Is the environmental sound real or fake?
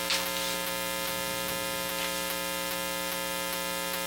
real